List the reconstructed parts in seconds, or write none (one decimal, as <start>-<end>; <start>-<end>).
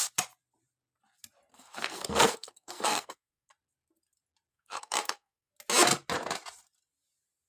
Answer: 1.5-3.5; 4.5-5.5